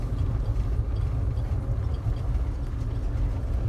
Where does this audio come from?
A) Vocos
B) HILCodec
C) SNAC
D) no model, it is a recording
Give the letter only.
D